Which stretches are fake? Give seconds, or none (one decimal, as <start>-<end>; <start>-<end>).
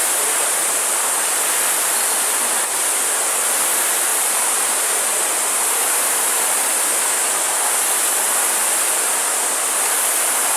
4.1-6.8